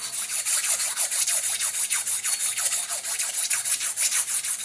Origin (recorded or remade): recorded